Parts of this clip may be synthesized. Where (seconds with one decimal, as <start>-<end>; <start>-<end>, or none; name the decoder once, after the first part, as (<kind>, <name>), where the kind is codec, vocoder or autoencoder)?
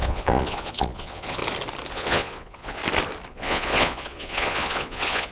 0.0-1.4 (vocoder, Vocos); 1.9-2.8; 3.3-5.3